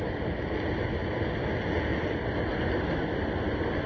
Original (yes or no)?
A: yes